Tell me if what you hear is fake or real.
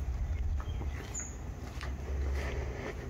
real